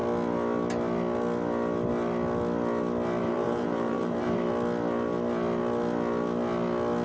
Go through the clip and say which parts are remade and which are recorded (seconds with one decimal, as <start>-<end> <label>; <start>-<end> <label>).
0.0-3.2 recorded; 3.2-4.5 remade; 4.5-7.0 recorded